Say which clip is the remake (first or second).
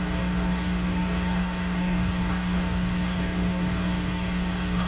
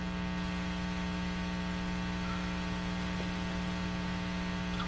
first